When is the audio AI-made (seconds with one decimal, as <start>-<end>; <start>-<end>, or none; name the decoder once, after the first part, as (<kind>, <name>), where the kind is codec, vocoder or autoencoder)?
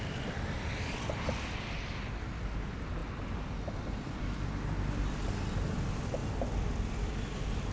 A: 6.2-7.1 (vocoder, BigVGAN v2)